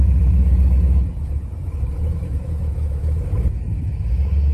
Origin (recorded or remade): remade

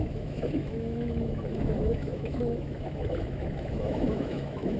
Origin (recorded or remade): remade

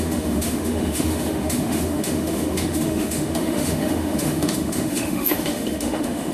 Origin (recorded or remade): remade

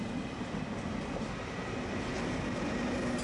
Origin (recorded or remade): recorded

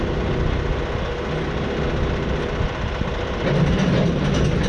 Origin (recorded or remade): recorded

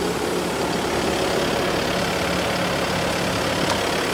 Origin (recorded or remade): recorded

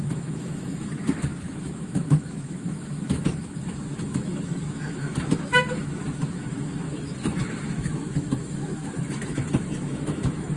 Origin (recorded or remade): remade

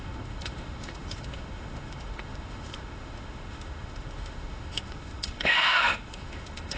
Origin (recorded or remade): remade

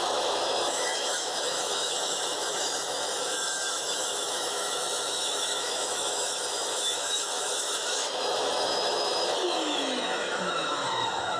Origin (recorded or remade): remade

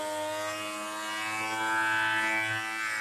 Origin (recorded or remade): recorded